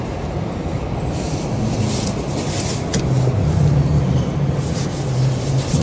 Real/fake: real